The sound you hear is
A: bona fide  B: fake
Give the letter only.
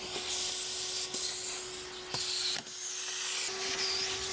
A